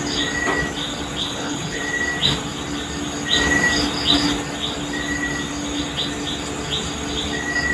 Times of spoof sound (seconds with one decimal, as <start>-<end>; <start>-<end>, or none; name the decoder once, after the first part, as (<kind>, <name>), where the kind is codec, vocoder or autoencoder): 1.2-1.8 (codec, HILCodec)